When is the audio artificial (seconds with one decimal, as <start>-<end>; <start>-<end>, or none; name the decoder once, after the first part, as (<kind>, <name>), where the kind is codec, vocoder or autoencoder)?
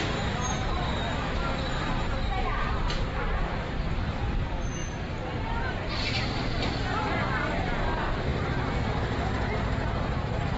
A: 4.8-5.9 (vocoder, BigVGAN v2)